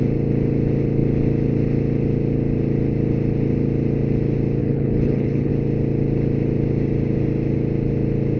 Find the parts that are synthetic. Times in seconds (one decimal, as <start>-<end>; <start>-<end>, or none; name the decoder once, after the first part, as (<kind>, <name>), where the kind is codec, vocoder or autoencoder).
4.6-5.5 (codec, HILCodec)